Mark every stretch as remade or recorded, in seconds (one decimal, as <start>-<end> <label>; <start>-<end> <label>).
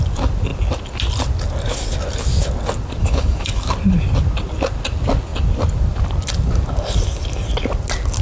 0.0-3.0 recorded; 3.0-3.7 remade; 3.7-8.2 recorded